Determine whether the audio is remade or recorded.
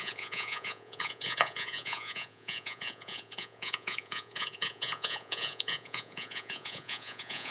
remade